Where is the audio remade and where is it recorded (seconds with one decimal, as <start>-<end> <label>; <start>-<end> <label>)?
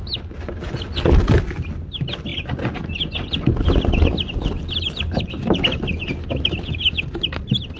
0.0-7.8 recorded